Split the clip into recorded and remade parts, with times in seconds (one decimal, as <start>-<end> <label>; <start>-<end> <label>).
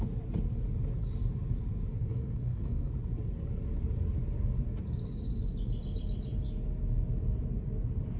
0.0-1.9 recorded; 1.9-2.9 remade; 2.9-8.2 recorded